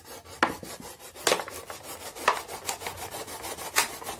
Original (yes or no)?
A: yes